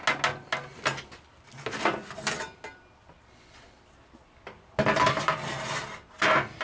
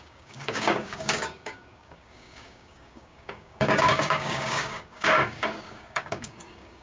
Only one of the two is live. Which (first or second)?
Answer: first